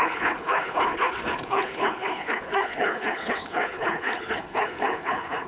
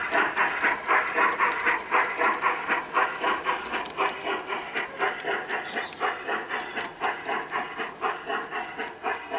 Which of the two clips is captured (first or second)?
second